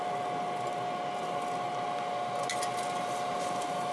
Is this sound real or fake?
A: real